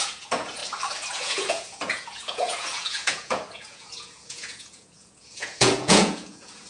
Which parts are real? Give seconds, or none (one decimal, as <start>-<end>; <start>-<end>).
0.6-1.1